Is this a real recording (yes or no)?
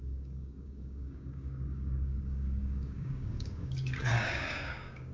no